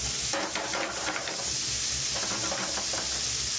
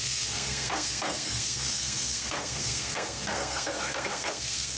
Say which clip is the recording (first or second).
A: first